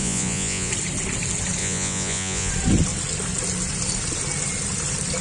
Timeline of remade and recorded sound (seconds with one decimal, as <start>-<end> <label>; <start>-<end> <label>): 0.0-0.7 remade; 0.7-1.6 recorded; 1.6-2.5 remade; 2.5-5.2 recorded